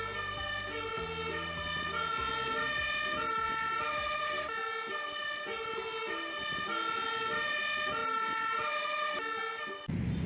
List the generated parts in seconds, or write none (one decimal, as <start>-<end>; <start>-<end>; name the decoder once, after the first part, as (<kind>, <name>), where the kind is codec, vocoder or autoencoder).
none